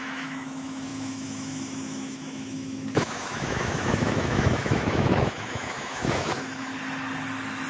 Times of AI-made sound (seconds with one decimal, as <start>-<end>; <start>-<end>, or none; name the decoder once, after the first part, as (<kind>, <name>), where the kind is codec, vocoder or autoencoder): 0.0-6.7 (autoencoder, DAC-VAE)